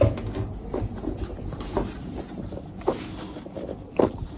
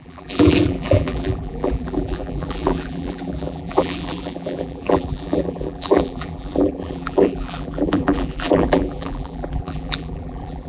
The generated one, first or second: second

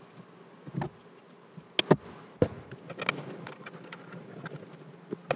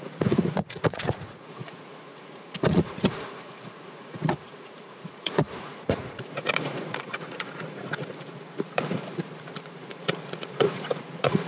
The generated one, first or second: second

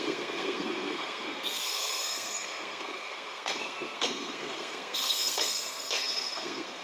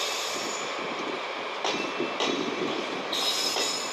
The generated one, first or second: first